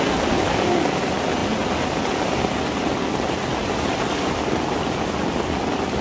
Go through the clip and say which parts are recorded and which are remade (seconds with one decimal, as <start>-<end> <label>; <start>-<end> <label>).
0.0-6.0 recorded